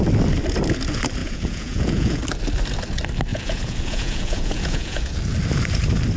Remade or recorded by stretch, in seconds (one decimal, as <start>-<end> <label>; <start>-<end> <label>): 0.0-1.2 recorded; 1.2-2.2 remade; 2.2-3.3 recorded; 3.3-5.2 remade; 5.2-6.2 recorded